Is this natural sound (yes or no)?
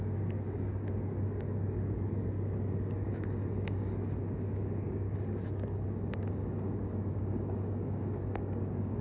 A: no